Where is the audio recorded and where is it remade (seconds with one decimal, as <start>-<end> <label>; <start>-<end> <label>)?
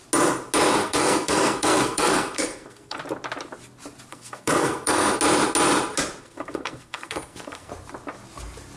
0.0-0.8 recorded; 0.8-3.0 remade; 3.0-4.1 recorded; 4.1-5.1 remade; 5.1-6.2 recorded; 6.2-7.7 remade; 7.7-8.8 recorded